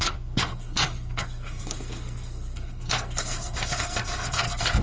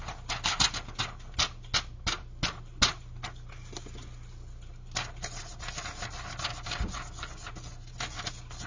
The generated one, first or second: first